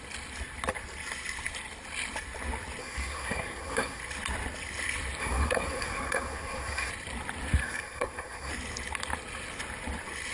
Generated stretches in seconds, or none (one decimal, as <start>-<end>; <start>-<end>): 2.8-4.0; 5.2-6.9; 7.6-8.5